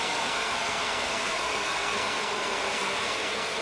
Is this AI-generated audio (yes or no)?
yes